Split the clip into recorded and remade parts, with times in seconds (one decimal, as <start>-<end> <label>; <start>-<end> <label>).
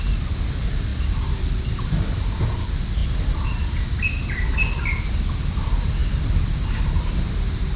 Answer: 0.0-7.8 recorded